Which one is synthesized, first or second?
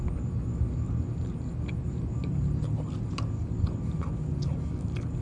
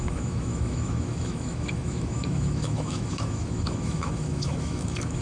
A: second